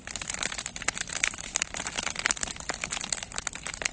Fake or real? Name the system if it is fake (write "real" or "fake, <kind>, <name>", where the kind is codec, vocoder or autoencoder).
fake, vocoder, BigVGAN v2